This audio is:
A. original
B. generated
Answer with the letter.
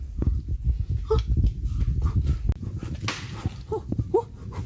A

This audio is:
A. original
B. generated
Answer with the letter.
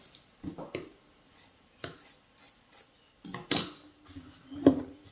A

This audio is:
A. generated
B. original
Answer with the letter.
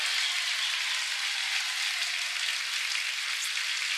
B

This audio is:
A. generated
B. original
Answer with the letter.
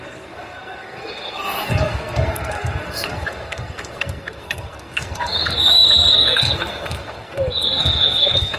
A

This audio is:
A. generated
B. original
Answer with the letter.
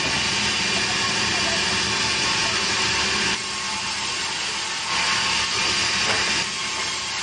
B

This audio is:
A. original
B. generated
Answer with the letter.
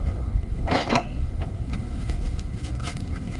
B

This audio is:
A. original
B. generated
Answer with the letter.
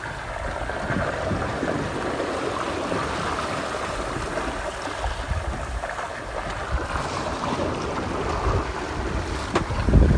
A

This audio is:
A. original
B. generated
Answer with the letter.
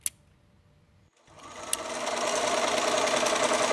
A